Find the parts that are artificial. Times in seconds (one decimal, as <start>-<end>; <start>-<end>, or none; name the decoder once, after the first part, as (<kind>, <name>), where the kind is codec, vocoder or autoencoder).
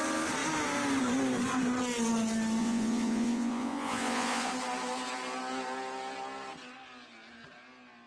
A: 2.6-4.5 (vocoder, Vocos)